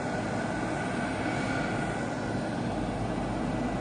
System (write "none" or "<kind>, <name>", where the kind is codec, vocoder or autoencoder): none